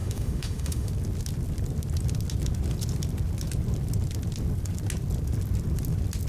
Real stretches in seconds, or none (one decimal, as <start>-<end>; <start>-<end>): 0.9-6.3